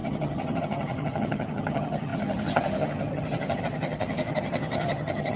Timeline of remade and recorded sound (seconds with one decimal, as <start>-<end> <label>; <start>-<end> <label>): 0.0-5.4 remade